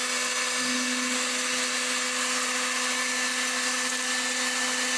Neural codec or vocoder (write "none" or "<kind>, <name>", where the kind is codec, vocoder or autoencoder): none